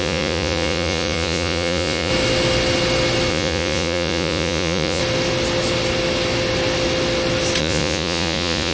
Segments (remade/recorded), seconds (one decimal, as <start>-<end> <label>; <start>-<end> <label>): 0.0-2.1 remade; 2.1-3.3 recorded; 3.3-5.0 remade; 5.0-7.6 recorded; 7.6-8.7 remade